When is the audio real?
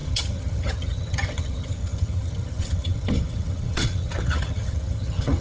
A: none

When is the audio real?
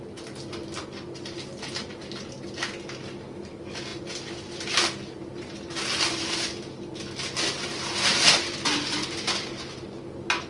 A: 0.0-10.5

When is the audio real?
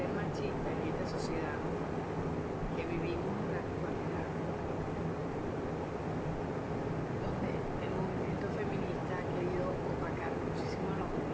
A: 0.0-11.3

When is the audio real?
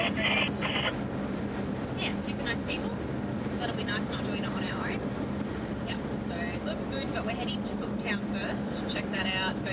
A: 0.0-9.7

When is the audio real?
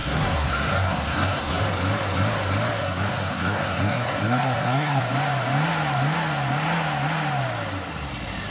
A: 1.6-2.8; 5.0-8.5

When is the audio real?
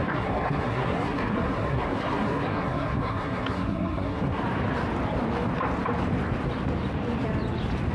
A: 4.4-7.9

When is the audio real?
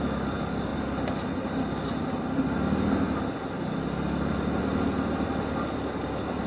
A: 0.0-6.5